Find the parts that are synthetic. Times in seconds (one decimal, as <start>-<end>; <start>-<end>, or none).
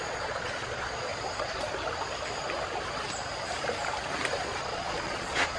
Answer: 0.0-1.1; 4.4-5.6